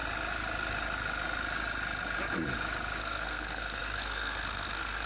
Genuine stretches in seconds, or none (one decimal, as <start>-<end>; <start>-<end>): 0.0-3.0